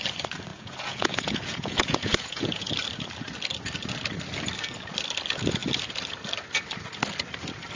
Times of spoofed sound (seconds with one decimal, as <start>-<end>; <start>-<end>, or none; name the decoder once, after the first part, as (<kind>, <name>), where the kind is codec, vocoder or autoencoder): 0.5-2.7 (vocoder, Vocos)